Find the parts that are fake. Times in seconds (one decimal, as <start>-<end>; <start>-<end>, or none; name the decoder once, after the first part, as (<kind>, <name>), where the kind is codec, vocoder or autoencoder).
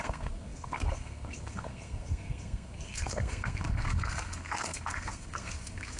0.0-6.0 (codec, SNAC)